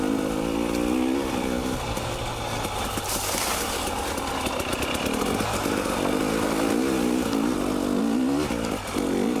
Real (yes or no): yes